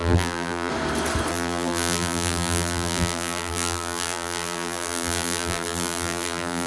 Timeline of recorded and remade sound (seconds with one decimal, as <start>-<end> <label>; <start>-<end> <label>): 0.0-0.7 remade; 0.7-1.3 recorded; 1.3-6.7 remade